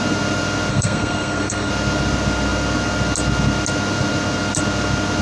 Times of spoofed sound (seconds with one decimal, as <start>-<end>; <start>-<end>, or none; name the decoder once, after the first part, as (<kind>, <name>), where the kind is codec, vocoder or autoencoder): 0.7-1.7 (codec, SNAC)